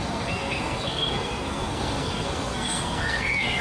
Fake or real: fake